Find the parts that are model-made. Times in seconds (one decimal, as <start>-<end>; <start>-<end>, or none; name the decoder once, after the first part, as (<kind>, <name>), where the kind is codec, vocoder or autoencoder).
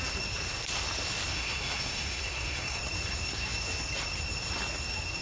1.3-2.8 (codec, SNAC)